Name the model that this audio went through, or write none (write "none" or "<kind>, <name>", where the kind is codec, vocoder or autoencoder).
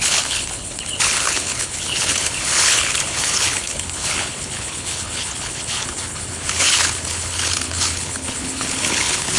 codec, HILCodec